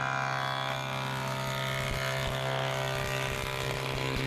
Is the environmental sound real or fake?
real